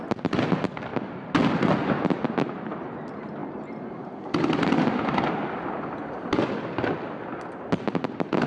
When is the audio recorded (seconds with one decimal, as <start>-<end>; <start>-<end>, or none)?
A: 0.0-8.5